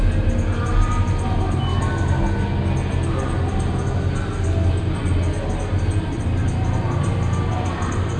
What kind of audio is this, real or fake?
real